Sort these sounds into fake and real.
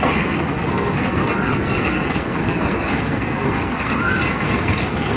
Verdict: fake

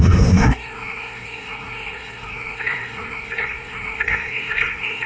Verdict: fake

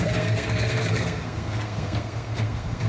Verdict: fake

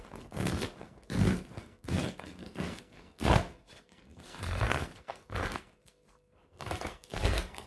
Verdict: fake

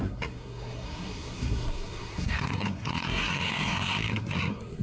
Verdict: fake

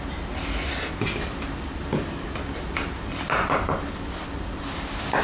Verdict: real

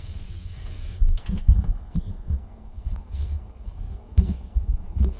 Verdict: fake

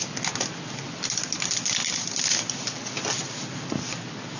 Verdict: real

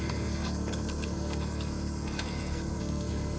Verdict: fake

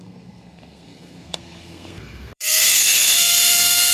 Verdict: fake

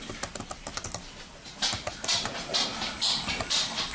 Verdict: real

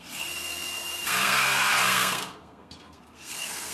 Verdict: fake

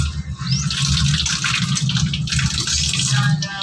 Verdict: real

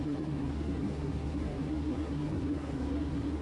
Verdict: fake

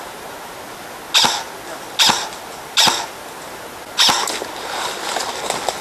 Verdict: real